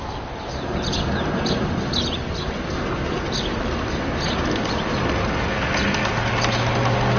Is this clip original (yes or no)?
yes